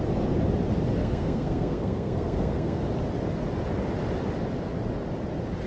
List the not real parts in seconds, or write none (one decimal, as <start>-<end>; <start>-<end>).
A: 1.0-2.8